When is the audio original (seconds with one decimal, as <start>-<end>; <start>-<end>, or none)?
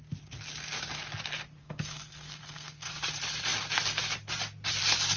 0.0-1.6; 2.9-5.2